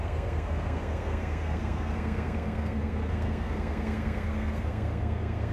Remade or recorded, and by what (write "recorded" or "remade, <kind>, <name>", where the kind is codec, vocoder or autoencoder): remade, codec, SNAC